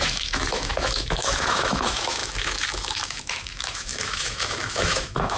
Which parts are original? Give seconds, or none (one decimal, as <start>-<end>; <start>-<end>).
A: none